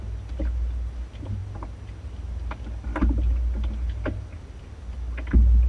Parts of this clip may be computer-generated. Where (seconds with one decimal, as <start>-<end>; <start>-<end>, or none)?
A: none